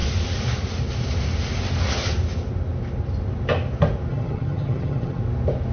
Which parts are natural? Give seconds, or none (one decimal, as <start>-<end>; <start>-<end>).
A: 0.0-4.1; 5.2-5.7